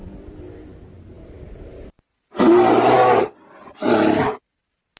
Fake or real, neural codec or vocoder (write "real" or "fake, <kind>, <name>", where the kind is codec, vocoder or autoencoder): real